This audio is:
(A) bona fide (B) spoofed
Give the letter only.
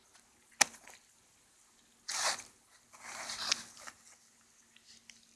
A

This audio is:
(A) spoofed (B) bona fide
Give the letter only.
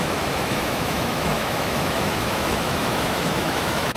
A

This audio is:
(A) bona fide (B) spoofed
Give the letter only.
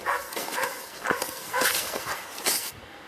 B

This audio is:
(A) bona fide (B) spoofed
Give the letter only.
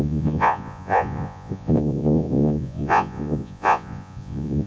B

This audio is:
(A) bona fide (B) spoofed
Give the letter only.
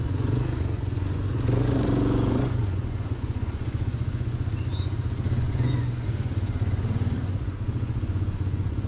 B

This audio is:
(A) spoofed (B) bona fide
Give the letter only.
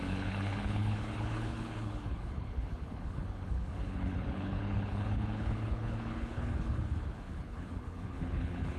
A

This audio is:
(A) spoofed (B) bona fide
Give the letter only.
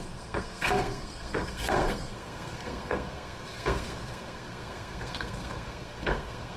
A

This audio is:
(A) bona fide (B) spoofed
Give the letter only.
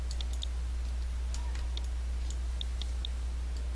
A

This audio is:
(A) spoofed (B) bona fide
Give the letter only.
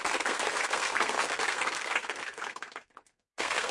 A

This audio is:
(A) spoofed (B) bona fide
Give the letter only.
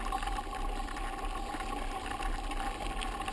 B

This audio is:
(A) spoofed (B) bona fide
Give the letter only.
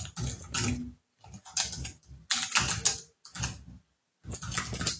B